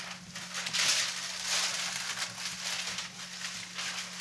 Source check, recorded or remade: recorded